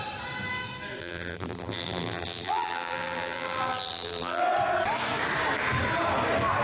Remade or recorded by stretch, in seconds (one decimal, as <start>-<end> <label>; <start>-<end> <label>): 0.0-1.0 recorded; 1.0-4.4 remade; 4.4-6.6 recorded